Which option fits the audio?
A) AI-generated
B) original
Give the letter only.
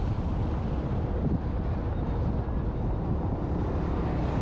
B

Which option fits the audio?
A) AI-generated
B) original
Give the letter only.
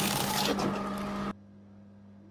B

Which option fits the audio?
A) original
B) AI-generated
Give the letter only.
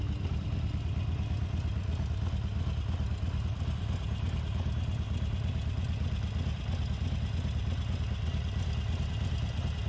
A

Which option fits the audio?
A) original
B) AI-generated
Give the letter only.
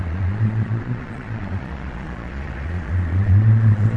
B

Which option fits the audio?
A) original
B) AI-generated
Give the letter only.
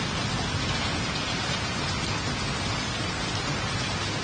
A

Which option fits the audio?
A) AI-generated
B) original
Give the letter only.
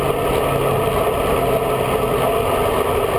B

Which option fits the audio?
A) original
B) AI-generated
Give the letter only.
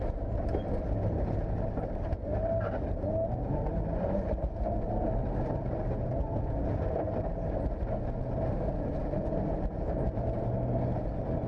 A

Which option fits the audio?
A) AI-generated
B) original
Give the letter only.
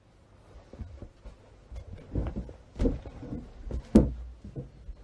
B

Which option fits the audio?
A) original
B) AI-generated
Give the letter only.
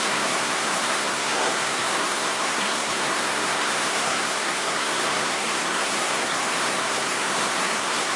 B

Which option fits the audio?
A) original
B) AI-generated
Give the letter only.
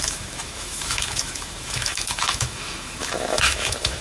B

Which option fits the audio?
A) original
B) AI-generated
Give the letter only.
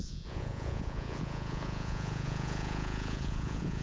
B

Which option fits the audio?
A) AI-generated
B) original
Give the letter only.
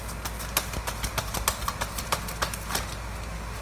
B